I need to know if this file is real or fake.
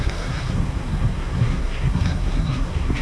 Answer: fake